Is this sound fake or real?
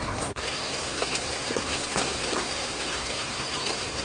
fake